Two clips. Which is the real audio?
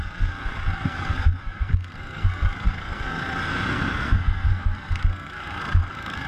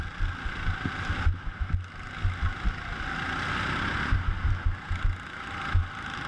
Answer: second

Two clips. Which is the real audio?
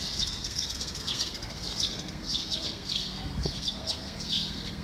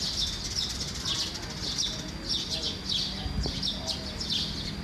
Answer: second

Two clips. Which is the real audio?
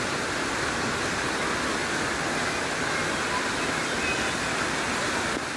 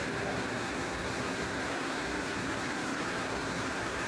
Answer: first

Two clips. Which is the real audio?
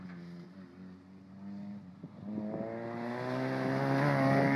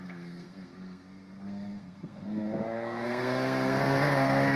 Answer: first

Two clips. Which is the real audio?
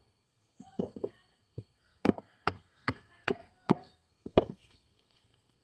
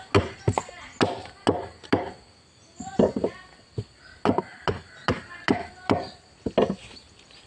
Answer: second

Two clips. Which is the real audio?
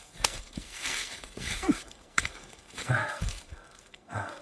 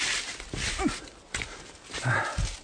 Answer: second